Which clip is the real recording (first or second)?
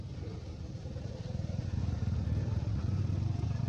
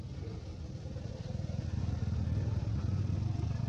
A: second